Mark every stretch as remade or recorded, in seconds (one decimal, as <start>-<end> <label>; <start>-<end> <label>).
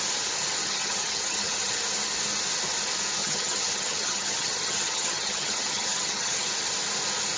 0.0-0.6 recorded; 0.6-1.7 remade; 1.7-3.2 recorded; 3.2-6.5 remade; 6.5-7.4 recorded